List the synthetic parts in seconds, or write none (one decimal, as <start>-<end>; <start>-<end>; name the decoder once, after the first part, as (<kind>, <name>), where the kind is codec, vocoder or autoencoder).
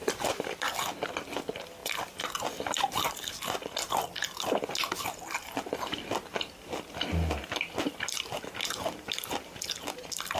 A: 1.8-3.9 (vocoder, BigVGAN v2)